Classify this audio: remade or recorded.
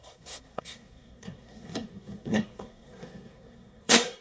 remade